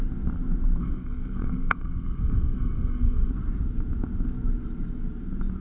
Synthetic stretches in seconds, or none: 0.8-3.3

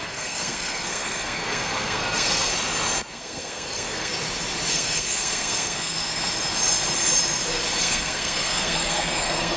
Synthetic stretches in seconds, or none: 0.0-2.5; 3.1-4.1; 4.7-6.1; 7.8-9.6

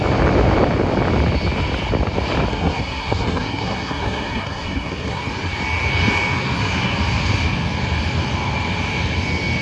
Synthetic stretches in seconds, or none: 2.5-5.2

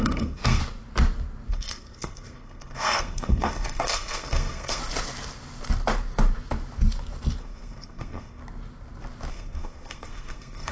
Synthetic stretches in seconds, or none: 0.0-0.6; 1.5-4.8; 7.4-8.4; 9.3-10.7

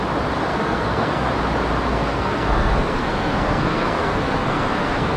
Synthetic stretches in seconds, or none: 0.5-1.3; 1.9-5.2

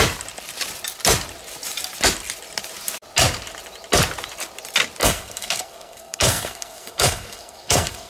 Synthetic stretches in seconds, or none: 5.0-8.1